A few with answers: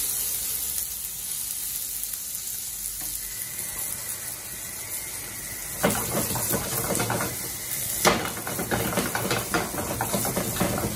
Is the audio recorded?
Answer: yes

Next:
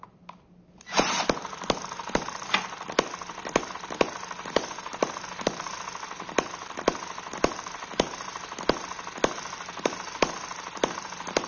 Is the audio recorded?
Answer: yes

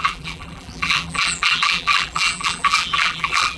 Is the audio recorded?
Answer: no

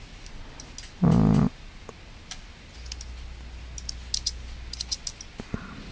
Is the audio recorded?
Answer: yes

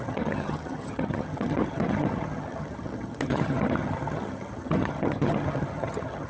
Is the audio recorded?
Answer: no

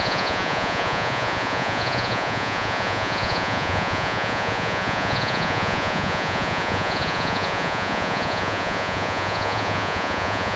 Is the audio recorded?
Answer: no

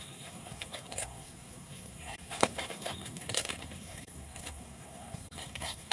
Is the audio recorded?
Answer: no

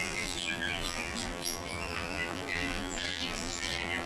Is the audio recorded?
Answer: no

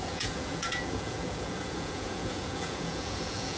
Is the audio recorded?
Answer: no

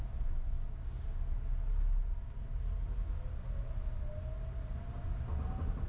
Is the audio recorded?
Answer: yes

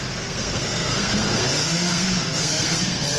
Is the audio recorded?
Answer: no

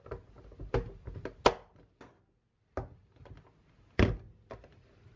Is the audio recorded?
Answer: yes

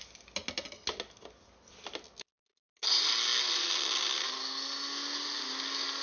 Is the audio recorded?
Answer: yes